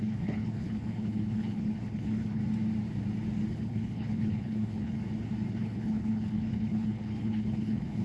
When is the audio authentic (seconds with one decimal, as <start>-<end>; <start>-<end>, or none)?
2.4-3.5; 5.0-5.5